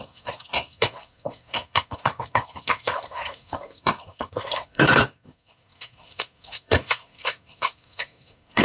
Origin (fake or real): fake